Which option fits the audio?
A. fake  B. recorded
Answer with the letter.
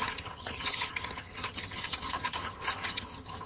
A